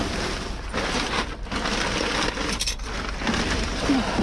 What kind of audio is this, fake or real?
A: real